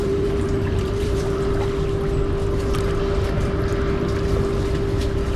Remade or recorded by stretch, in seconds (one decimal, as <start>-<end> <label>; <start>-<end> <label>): 0.0-1.5 remade; 1.5-5.4 recorded